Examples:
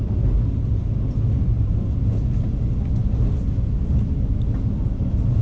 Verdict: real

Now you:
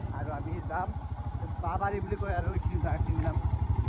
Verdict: real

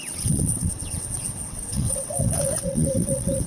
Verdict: fake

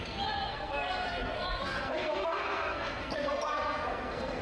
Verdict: fake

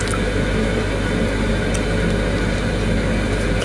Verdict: real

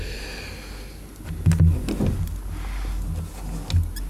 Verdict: real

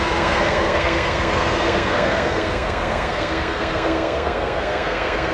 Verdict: fake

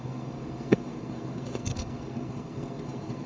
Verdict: fake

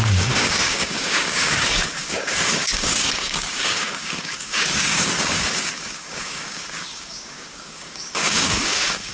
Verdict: fake